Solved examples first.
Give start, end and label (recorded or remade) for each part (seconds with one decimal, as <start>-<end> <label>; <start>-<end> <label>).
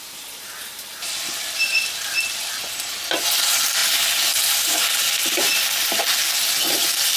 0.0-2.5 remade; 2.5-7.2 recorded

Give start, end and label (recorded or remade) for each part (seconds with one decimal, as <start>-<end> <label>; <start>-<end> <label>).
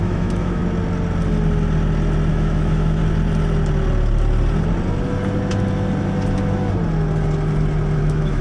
0.0-0.6 remade; 0.6-2.3 recorded; 2.3-3.0 remade; 3.0-8.0 recorded; 8.0-8.4 remade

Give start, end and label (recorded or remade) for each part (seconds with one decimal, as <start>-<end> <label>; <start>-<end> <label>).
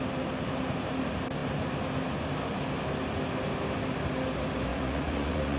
0.0-4.7 recorded; 4.7-5.6 remade